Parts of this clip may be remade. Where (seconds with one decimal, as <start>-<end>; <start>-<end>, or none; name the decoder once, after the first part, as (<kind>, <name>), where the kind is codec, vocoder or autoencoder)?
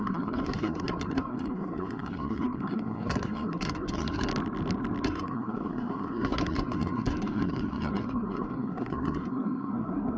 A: 0.0-4.3 (codec, SNAC); 5.0-10.2